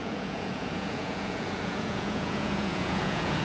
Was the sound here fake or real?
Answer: fake